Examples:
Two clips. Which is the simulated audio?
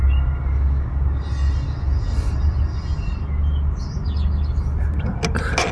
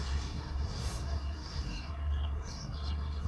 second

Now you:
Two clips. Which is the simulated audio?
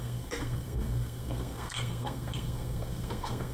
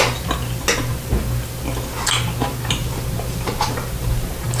first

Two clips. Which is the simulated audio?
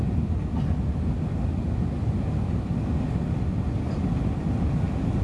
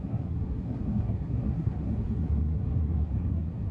second